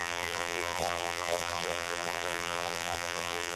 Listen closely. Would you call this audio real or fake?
fake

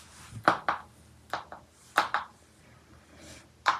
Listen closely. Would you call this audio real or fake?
real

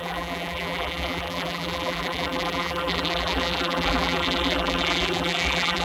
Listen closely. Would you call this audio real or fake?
fake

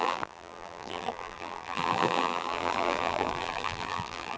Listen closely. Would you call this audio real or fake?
fake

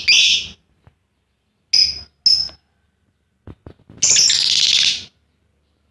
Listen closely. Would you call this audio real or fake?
real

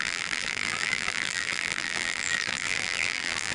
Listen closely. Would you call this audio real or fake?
fake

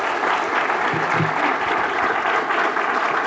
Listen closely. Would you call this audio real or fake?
real